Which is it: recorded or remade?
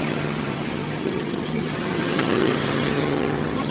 remade